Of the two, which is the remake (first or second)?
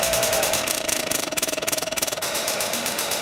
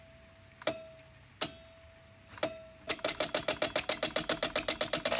first